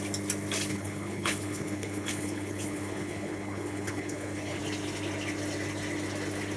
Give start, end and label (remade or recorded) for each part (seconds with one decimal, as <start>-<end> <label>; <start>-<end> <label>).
0.0-0.7 recorded; 0.7-4.6 remade; 4.6-6.6 recorded